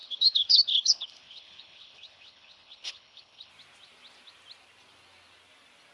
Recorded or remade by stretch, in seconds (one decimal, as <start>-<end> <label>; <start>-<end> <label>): 0.0-3.5 remade; 3.5-5.9 recorded

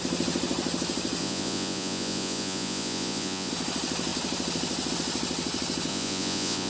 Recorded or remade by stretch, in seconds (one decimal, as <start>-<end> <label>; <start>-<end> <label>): 0.0-1.2 recorded; 1.2-3.5 remade; 3.5-5.9 recorded; 5.9-6.7 remade

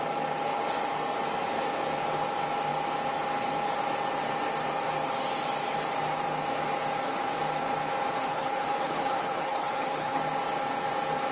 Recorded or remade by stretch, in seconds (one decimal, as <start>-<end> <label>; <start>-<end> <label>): 0.0-8.2 recorded; 8.2-10.2 remade; 10.2-11.3 recorded

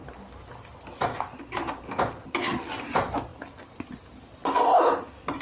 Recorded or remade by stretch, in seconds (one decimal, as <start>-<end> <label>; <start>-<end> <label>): 0.0-5.4 recorded

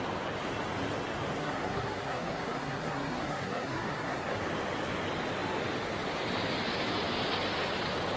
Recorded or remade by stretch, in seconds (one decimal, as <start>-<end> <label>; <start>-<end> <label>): 0.0-1.4 recorded; 1.4-4.4 remade; 4.4-8.2 recorded